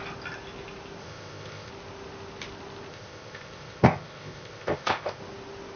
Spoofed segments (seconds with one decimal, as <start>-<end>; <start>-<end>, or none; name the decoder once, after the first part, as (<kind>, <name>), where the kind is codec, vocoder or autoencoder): 1.0-1.7 (codec, ZipCodec); 2.9-5.2